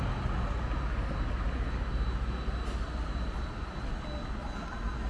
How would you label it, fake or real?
real